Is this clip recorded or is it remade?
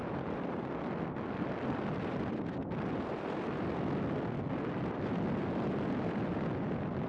recorded